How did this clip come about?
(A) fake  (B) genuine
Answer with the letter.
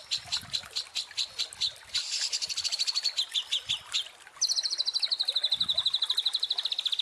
B